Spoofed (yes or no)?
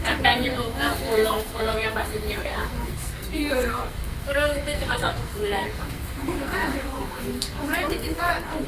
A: yes